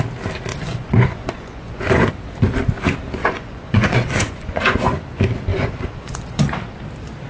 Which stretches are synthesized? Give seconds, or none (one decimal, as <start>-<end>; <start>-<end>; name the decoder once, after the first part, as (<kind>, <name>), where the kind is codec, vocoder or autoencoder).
0.5-2.1 (vocoder, Vocos); 3.2-4.8; 5.5-6.4